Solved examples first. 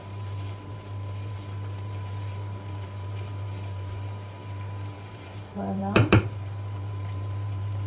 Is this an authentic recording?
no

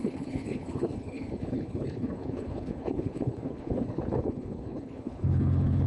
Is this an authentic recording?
no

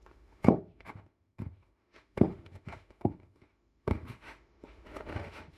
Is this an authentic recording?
no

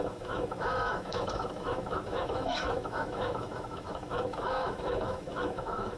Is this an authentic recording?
no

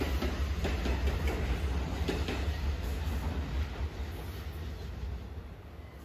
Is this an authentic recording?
yes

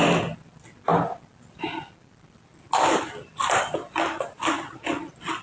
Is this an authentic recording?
yes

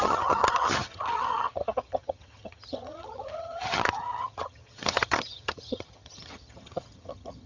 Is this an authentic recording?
no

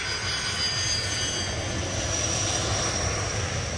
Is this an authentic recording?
yes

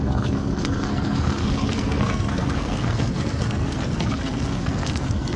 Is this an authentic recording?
no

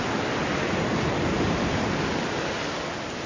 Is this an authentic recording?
yes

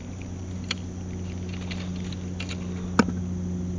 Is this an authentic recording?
yes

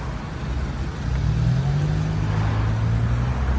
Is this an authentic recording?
yes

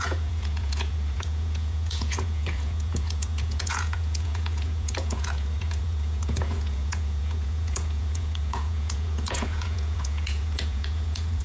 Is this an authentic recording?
no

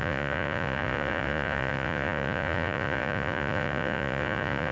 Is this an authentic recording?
no